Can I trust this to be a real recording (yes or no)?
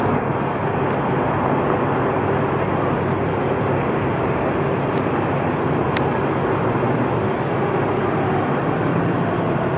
yes